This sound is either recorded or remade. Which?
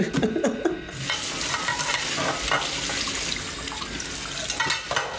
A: recorded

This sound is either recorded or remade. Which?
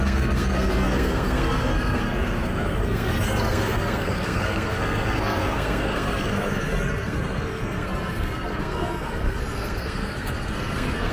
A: remade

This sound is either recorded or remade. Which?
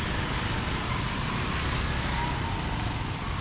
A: recorded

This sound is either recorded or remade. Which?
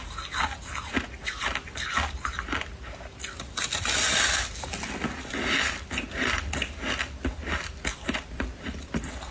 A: recorded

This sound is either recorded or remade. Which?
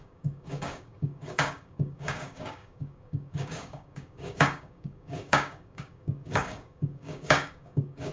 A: remade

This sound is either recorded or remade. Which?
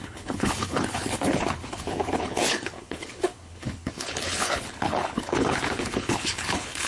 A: remade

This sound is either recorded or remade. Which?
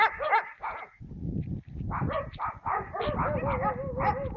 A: recorded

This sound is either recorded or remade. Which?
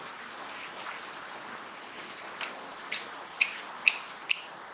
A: recorded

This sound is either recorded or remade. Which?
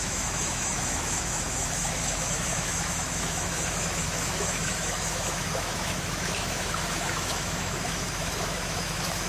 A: remade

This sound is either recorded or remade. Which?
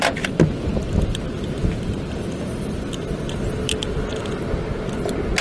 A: recorded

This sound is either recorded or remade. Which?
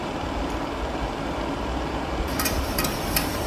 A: remade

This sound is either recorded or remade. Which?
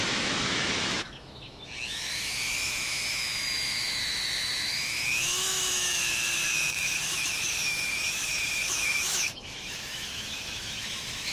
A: remade